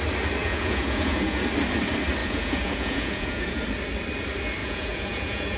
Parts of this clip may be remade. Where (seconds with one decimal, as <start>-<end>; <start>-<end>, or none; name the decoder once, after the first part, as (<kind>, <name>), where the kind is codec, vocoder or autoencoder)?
0.4-1.4 (vocoder, Vocos); 2.2-3.6; 4.6-5.6